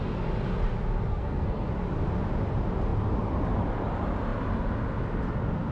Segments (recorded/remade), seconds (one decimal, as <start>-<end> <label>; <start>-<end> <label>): 0.0-1.1 recorded; 1.1-1.7 remade; 1.7-5.7 recorded